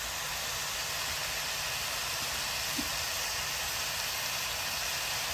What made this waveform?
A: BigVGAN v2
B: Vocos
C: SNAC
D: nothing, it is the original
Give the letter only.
D